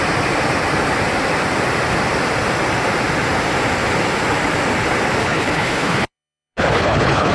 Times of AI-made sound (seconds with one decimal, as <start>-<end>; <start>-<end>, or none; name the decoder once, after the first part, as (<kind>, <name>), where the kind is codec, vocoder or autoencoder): 5.2-7.3 (codec, HILCodec)